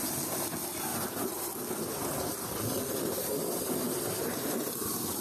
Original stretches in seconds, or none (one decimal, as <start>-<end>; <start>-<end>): 0.0-5.2

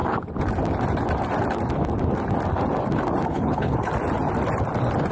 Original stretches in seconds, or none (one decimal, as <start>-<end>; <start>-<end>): 0.0-3.3; 3.9-5.1

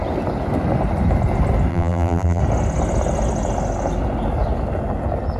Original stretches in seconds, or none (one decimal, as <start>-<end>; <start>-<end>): 0.0-1.7; 2.4-5.4

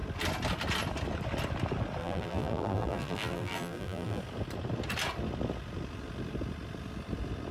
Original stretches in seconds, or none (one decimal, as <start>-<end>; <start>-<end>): 0.0-2.0; 4.2-7.5

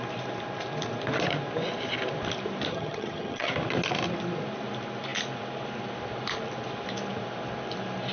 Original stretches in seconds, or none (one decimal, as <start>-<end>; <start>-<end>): 0.0-2.7; 3.5-8.1

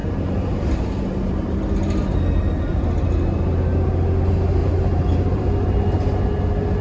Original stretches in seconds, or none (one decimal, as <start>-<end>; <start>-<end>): 1.6-4.6; 5.5-6.8

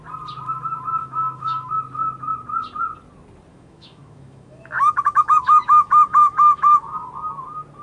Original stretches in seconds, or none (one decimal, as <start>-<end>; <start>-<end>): 0.0-1.0; 1.7-3.5; 7.1-7.8

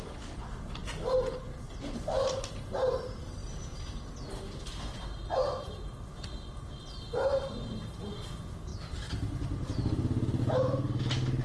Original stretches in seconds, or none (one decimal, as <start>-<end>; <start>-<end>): 0.0-11.4